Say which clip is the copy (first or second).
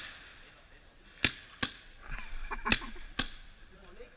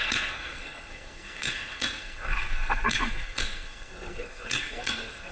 second